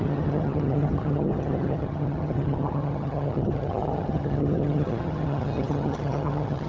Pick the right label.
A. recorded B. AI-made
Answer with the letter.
B